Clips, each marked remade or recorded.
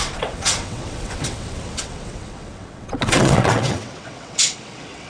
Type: remade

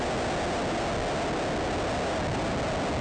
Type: recorded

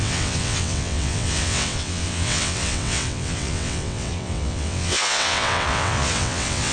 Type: remade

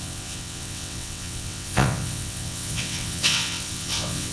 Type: remade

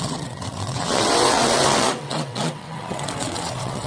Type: remade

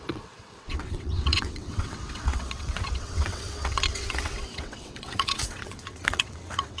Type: remade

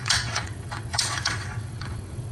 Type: remade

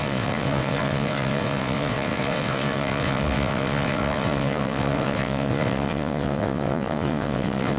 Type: remade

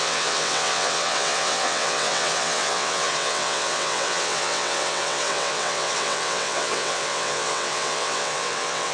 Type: remade